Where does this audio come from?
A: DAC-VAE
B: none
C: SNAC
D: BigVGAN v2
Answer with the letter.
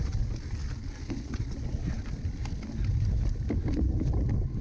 B